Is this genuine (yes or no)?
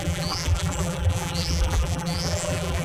no